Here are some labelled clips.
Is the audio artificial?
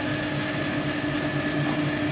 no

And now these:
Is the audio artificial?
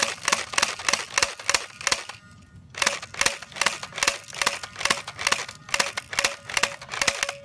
no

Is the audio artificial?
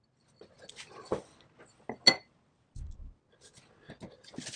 no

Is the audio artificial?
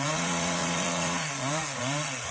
yes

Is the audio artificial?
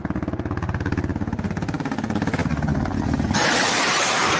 no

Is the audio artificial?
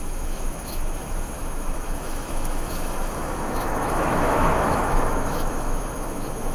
yes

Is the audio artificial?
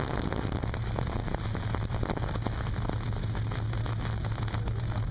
no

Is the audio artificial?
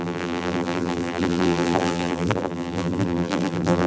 yes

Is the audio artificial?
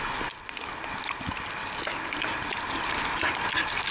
no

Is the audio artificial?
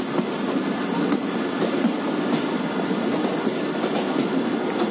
no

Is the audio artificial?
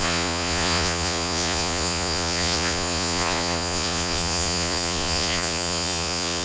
yes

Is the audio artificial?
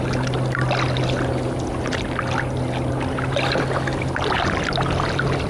no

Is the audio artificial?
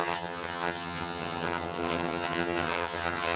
yes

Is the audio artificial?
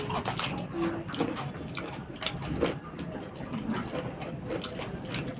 no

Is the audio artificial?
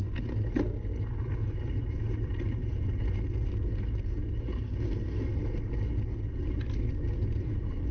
no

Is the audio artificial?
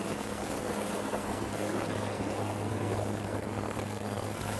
yes